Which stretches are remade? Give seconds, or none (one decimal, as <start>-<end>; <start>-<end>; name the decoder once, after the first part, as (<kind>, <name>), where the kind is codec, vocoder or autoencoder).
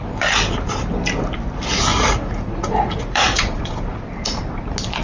1.9-3.8 (vocoder, Vocos)